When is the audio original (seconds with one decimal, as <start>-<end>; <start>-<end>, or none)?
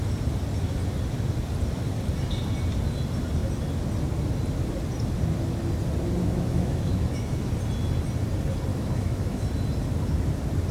0.0-6.2; 7.5-8.7; 9.4-10.7